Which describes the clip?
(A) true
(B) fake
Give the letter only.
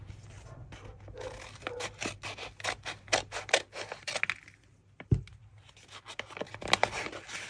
A